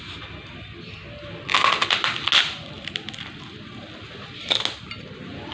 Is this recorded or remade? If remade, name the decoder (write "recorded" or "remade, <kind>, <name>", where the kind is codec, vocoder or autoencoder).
recorded